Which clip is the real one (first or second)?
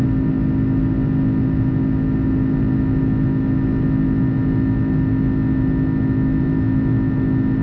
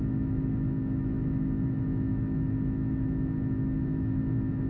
first